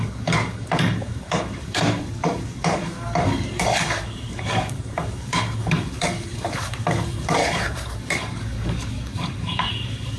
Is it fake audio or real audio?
fake